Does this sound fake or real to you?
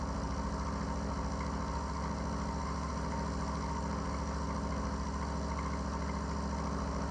real